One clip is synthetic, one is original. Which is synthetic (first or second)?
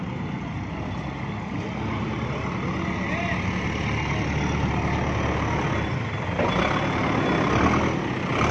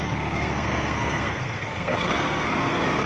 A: second